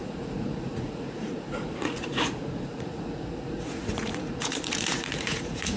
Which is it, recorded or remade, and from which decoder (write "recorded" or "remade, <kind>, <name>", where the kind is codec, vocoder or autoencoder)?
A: remade, vocoder, Vocos